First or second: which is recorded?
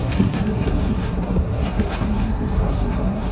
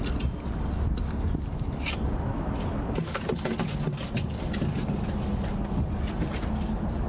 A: second